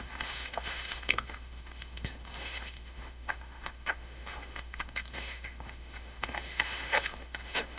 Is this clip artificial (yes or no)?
yes